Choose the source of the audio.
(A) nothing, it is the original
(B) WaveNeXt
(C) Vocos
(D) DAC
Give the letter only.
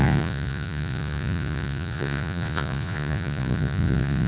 C